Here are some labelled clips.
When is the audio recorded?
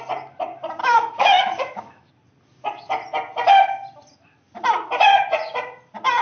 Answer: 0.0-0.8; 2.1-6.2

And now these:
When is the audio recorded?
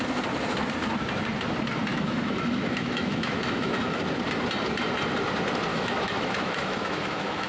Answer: 0.0-1.9; 4.0-5.7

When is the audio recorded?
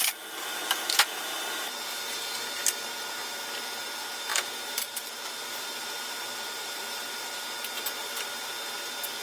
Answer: 0.0-4.3; 7.4-8.0; 8.5-9.2